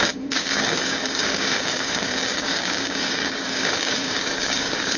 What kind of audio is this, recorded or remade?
remade